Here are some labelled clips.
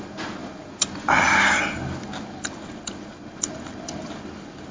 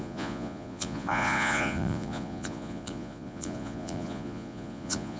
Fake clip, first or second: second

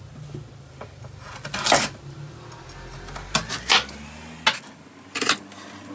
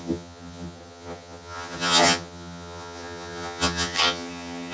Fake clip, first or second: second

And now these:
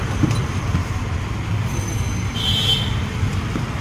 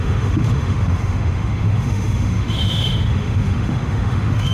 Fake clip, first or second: second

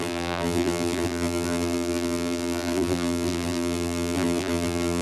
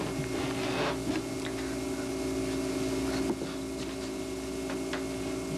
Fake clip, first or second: first